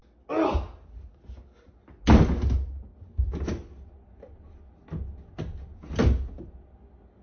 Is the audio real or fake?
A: real